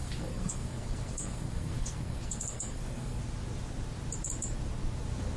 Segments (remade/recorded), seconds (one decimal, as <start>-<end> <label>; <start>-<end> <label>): 0.0-3.2 remade; 3.2-5.4 recorded